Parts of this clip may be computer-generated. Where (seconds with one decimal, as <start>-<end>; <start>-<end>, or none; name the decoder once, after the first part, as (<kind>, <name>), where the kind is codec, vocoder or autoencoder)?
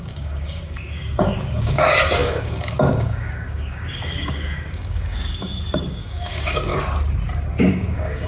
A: 0.0-6.7 (codec, DAC); 7.7-8.3